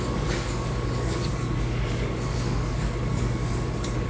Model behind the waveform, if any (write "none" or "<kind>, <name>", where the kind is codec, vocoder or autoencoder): codec, DAC